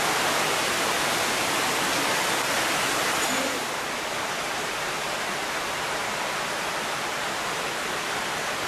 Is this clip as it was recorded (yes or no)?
yes